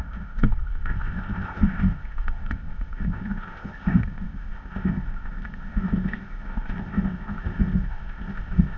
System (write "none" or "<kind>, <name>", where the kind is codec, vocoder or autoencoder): codec, ZipCodec